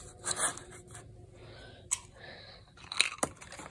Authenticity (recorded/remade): recorded